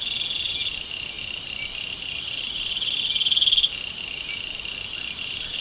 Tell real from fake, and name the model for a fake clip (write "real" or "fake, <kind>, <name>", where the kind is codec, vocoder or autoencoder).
real